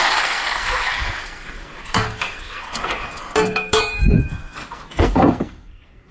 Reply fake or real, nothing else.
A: fake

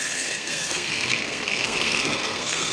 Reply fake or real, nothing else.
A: fake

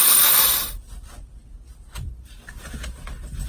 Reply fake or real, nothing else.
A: real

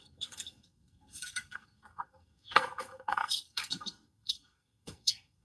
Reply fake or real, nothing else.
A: fake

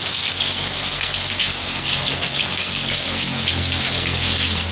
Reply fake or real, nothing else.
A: fake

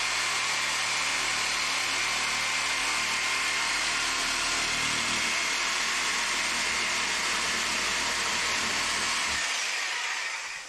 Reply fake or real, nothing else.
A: real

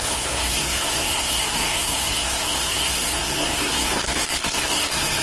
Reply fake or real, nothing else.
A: fake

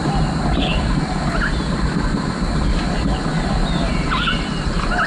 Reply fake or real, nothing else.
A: real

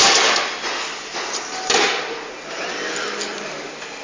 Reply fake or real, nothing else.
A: real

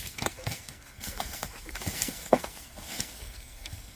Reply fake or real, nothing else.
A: fake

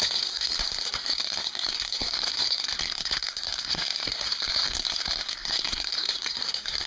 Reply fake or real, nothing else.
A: fake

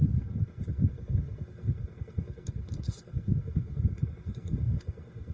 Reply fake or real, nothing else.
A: fake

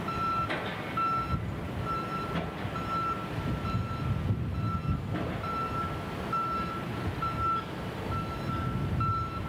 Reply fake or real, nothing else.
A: real